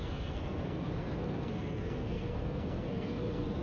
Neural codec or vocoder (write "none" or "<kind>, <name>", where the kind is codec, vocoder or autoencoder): codec, SNAC